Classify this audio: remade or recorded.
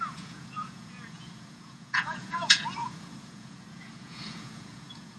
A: remade